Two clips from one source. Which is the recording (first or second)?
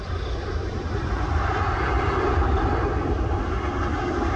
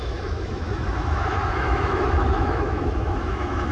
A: first